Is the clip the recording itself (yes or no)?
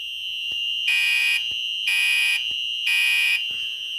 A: no